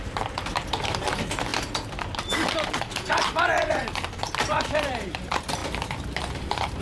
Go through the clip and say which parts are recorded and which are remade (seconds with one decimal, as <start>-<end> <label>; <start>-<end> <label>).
0.0-1.5 remade; 1.5-2.8 recorded; 2.8-5.6 remade; 5.6-6.2 recorded; 6.2-6.8 remade